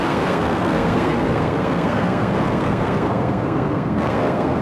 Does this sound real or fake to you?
fake